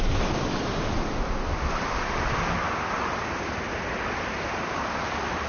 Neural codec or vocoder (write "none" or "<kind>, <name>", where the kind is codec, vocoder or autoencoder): none